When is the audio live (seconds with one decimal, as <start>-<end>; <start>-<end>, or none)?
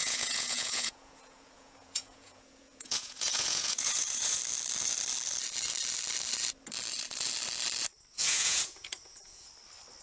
4.4-8.1; 9.5-10.0